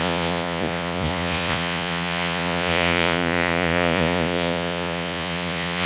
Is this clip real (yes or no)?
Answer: no